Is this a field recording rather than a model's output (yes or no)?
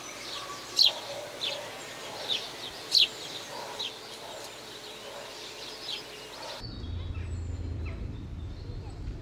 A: yes